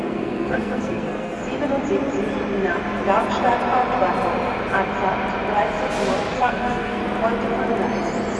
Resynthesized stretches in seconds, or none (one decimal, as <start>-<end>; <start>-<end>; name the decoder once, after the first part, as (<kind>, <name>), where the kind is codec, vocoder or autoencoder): 0.0-1.4 (codec, SNAC); 6.3-7.0